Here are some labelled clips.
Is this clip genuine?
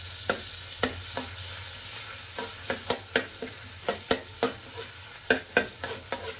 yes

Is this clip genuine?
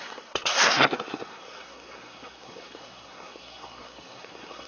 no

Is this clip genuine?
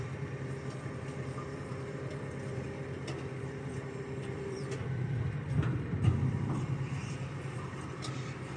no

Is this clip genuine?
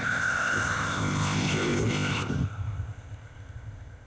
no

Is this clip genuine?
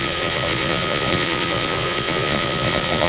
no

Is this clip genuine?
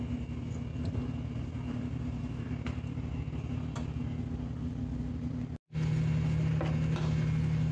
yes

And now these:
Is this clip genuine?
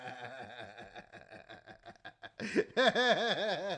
yes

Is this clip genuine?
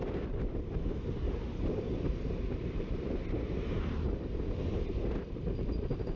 no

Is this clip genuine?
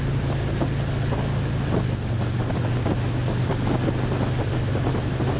yes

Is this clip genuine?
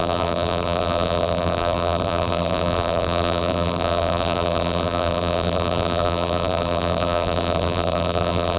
no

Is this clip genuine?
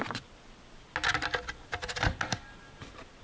yes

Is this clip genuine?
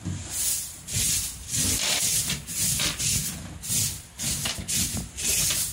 yes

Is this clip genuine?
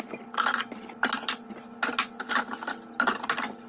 yes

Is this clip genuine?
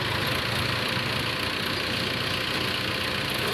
yes